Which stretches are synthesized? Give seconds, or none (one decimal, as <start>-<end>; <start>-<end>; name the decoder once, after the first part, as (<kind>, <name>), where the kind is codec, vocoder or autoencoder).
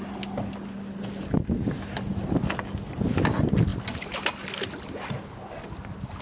none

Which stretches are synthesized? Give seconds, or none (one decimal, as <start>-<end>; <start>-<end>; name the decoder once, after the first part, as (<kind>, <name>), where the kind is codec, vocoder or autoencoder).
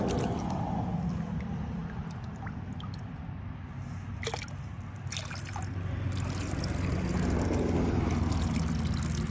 none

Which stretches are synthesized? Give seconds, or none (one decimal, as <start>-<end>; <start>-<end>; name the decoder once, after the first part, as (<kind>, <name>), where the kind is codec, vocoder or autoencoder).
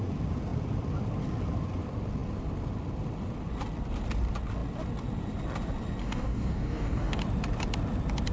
6.0-7.2 (codec, DAC)